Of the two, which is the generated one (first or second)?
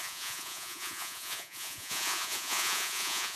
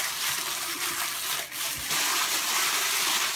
first